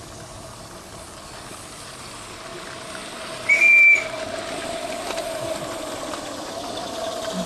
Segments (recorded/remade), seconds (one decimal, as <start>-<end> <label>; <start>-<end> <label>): 0.0-7.5 recorded